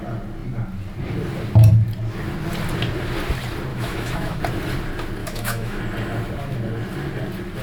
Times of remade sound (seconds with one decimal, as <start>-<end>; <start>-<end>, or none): 3.7-4.4; 5.2-5.8